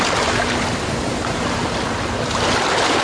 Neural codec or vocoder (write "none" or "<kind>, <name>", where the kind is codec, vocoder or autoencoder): none